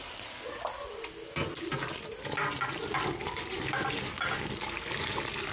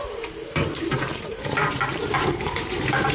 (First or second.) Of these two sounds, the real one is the first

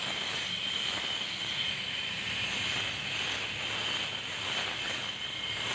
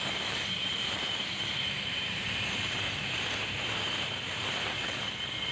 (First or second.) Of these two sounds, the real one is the first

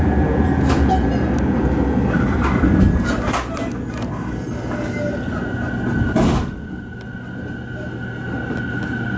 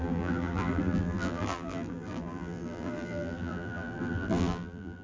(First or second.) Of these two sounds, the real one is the first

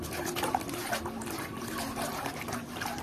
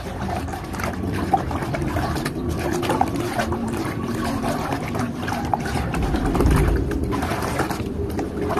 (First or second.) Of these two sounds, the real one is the first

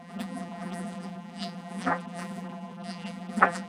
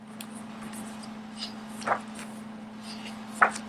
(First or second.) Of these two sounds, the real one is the second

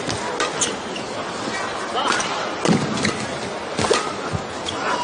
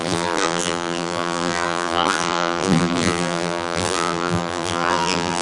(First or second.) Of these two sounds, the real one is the first